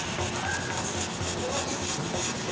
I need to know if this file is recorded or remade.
recorded